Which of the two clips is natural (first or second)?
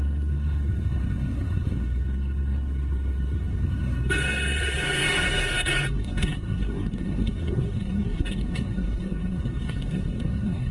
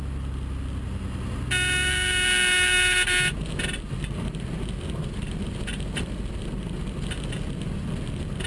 second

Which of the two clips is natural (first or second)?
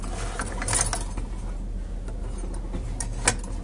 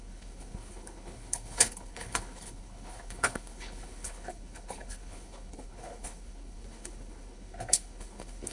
first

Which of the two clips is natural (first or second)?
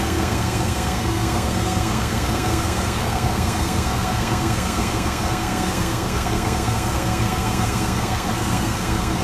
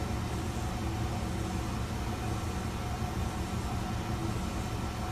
second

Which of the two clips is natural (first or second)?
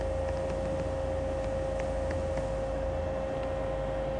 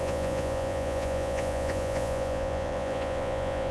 first